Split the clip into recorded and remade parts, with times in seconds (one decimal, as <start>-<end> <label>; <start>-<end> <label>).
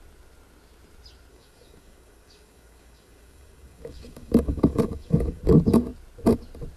0.0-1.3 recorded; 1.3-5.4 remade; 5.4-6.8 recorded